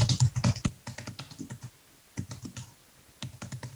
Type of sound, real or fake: real